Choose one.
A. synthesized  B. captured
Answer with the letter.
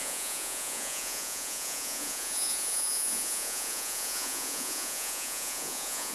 A